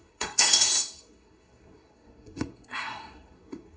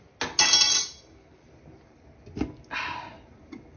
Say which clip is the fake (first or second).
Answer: first